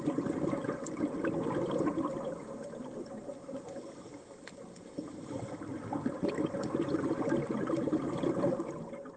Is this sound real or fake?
real